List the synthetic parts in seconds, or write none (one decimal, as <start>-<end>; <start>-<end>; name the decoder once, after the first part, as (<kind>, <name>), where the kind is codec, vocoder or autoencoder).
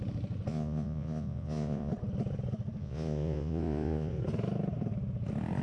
0.5-1.9 (vocoder, Vocos); 2.8-4.2